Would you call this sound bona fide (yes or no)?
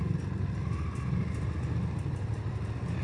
yes